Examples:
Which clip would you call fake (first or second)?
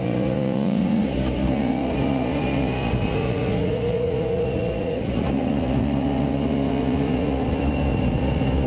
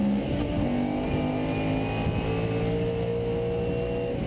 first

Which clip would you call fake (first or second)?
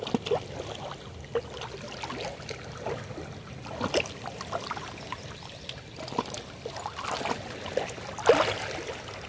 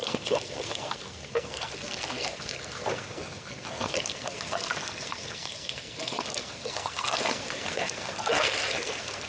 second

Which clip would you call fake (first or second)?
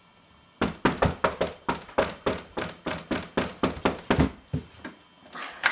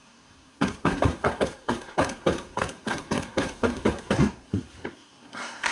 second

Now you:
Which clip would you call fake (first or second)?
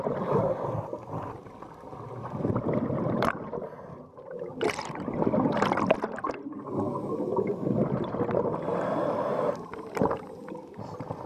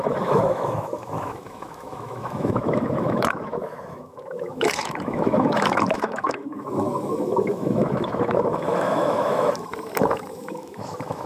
second